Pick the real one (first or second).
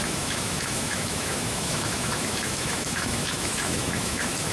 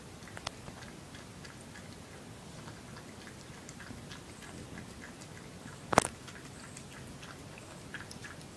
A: second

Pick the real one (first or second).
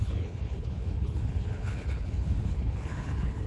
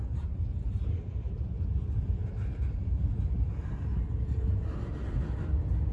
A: second